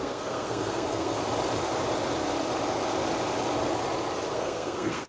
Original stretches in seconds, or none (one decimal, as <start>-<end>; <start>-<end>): 1.2-4.3